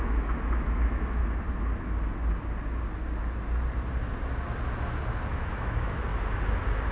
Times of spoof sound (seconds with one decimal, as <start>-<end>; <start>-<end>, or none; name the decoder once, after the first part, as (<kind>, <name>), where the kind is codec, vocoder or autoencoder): 0.0-1.2 (autoencoder, DAC-VAE); 5.3-6.1